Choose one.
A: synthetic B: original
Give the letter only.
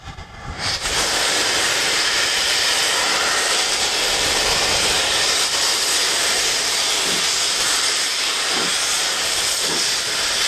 A